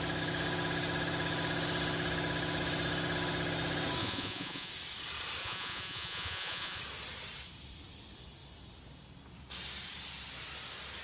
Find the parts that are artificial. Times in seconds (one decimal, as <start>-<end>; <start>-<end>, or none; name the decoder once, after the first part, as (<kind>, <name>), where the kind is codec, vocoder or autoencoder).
4.0-4.7 (vocoder, Vocos); 5.4-6.8